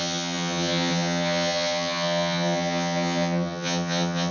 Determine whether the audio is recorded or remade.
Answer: remade